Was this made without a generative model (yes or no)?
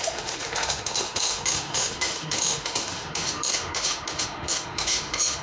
no